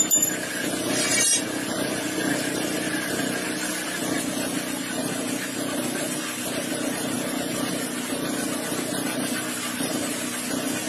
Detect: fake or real real